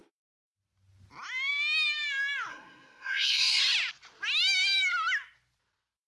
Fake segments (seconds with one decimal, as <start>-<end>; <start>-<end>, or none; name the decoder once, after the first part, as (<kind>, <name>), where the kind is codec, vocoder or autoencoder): 2.5-3.6 (codec, SNAC)